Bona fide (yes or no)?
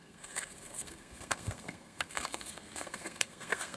no